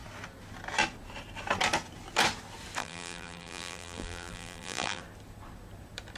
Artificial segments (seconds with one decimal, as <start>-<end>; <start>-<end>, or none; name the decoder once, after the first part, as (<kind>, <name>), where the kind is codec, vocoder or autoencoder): 2.8-5.0 (vocoder, BigVGAN v2)